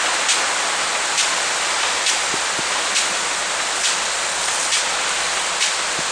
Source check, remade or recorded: recorded